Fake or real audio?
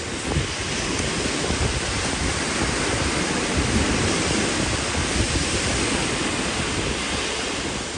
real